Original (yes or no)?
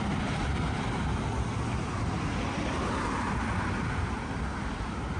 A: yes